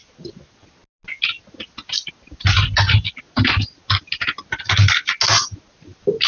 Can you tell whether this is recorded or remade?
recorded